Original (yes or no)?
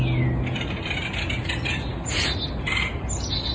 yes